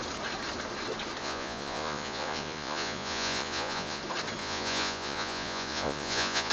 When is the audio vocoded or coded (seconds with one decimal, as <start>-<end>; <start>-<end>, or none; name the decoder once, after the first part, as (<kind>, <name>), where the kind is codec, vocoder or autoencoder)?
1.2-4.0 (vocoder, Vocos); 4.4-6.5